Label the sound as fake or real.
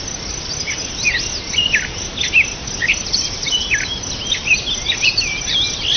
real